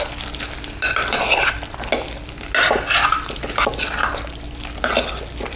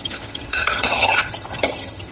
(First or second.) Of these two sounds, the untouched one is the first